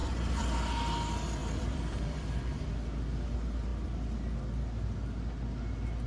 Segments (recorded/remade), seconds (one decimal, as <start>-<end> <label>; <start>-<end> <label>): 0.0-0.7 remade; 0.7-1.4 recorded; 1.4-2.7 remade; 2.7-6.1 recorded